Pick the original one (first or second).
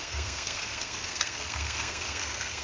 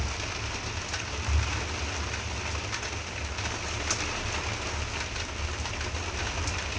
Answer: second